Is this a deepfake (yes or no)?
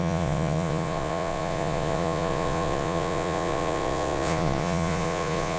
yes